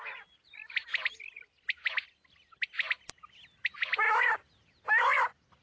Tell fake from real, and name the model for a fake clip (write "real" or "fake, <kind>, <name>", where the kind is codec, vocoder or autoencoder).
real